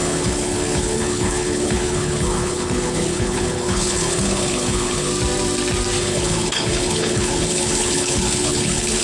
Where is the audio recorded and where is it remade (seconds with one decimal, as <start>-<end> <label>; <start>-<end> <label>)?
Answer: 0.0-5.1 remade; 5.1-6.0 recorded; 6.0-9.0 remade